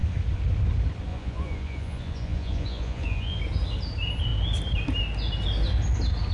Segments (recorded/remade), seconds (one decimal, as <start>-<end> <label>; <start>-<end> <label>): 0.0-1.1 recorded; 1.1-3.4 remade; 3.4-6.3 recorded